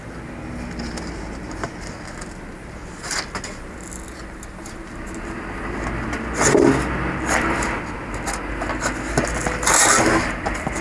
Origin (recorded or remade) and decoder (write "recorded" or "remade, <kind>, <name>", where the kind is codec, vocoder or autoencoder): recorded